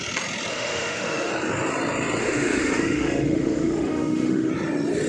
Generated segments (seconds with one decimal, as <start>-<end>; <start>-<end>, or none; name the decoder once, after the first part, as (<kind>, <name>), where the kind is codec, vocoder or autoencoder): 0.5-1.3 (autoencoder, DAC-VAE); 2.2-4.5